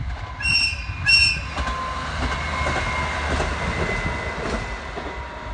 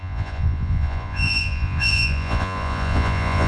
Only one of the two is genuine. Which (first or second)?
first